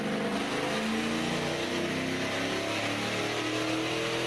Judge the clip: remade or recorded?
recorded